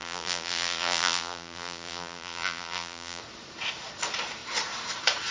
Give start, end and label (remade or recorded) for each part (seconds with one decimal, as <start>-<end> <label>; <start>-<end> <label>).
0.0-3.2 remade; 3.2-5.3 recorded